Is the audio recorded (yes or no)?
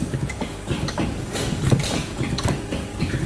no